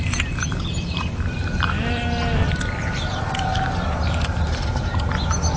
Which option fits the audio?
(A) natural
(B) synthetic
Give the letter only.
A